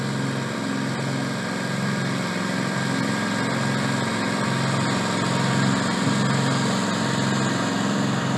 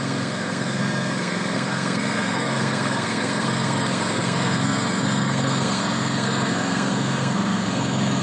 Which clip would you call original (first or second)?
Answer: first